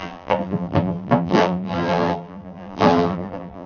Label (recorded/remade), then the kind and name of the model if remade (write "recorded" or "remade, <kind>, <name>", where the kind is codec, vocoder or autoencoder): remade, vocoder, BigVGAN v2